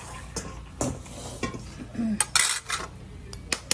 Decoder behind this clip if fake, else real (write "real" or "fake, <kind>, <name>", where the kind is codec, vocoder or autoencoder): real